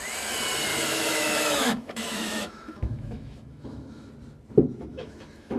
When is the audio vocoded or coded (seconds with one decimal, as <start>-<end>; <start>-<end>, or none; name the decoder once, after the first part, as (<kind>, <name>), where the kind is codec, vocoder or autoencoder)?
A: 0.7-4.1 (autoencoder, DAC-VAE); 4.9-5.6